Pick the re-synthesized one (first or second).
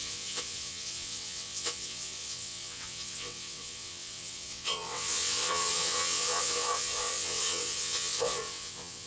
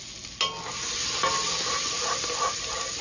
first